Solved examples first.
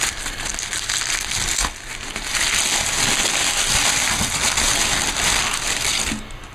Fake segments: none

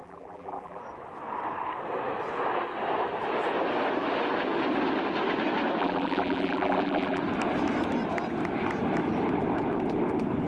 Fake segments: 0.0-0.8 (vocoder, BigVGAN v2); 5.8-7.2

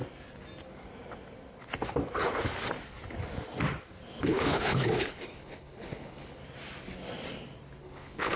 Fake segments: 4.2-6.4 (codec, HILCodec); 7.8-8.4

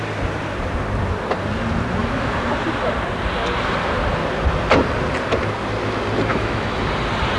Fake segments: 2.0-2.5 (autoencoder, DAC-VAE); 6.3-6.8

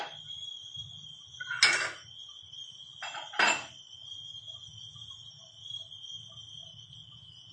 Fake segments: none

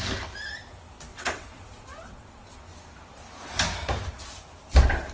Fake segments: 1.1-2.6 (vocoder, WaveNeXt)